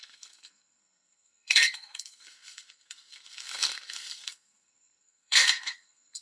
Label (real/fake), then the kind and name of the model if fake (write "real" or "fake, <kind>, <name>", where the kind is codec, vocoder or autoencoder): fake, codec, SNAC